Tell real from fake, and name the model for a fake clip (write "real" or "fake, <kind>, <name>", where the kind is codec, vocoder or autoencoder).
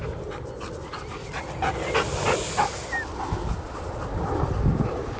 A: real